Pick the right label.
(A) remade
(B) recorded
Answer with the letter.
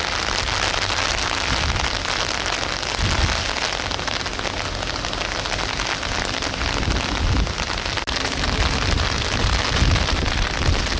B